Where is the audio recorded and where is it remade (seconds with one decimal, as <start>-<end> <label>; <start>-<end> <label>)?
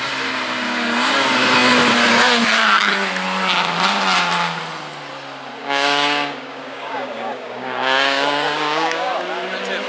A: 0.0-5.6 recorded; 5.6-9.1 remade; 9.1-9.9 recorded